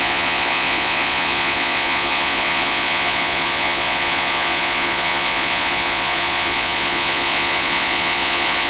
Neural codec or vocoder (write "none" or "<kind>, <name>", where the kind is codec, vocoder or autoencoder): vocoder, Vocos